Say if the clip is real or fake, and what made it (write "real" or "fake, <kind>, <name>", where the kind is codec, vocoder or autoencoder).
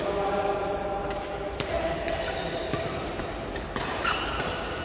real